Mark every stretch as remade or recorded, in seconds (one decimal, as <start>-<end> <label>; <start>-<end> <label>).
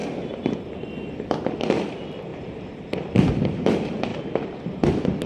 0.0-2.3 recorded; 2.3-3.4 remade; 3.4-4.1 recorded; 4.1-4.6 remade; 4.6-5.3 recorded